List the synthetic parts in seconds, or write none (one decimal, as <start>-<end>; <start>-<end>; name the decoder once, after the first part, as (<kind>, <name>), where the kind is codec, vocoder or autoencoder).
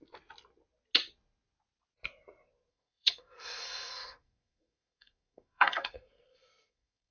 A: 2.7-7.1 (codec, SNAC)